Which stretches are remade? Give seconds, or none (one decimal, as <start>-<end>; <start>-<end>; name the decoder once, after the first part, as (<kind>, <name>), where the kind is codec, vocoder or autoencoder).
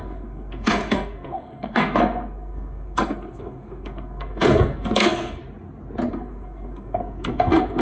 0.0-5.4 (codec, SNAC); 6.1-7.8